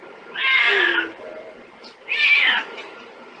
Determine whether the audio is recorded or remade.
recorded